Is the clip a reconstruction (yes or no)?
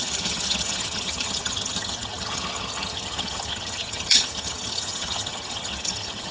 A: yes